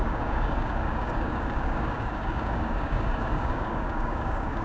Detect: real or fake fake